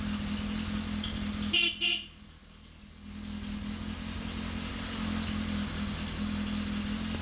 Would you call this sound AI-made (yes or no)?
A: no